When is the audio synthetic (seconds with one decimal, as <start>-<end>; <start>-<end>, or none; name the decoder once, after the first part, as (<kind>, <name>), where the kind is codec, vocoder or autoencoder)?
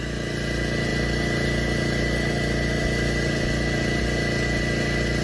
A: none